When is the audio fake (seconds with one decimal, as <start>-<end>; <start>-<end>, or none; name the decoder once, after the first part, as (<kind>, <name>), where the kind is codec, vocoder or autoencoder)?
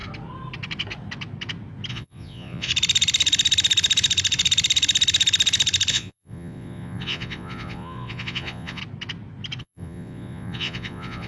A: 1.9-2.7 (vocoder, Vocos); 5.9-8.8; 9.6-11.3